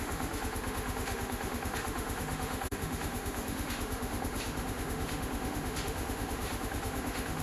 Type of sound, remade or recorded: remade